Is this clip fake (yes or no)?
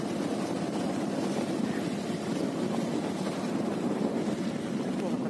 no